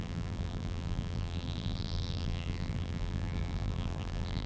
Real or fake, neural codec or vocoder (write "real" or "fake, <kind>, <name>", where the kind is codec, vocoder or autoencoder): fake, vocoder, BigVGAN v2